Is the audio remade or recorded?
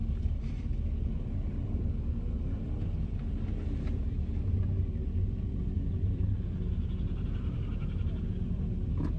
remade